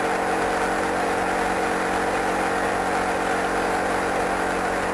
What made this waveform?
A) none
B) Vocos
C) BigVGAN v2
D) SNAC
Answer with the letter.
A